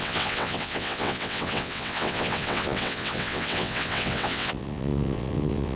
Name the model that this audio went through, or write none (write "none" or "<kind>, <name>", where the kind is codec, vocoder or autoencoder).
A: vocoder, WaveNeXt